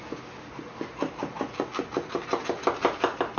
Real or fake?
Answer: real